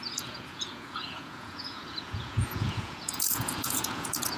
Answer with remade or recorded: remade